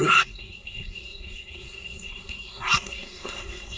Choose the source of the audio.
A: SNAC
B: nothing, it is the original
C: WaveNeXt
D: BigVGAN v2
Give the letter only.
A